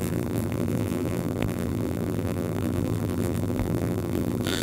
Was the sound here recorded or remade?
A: remade